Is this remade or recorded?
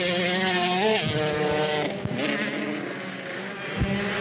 recorded